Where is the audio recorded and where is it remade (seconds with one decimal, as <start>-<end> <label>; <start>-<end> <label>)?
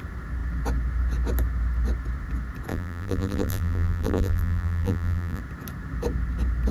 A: 0.0-2.7 recorded; 2.7-5.4 remade; 5.4-6.7 recorded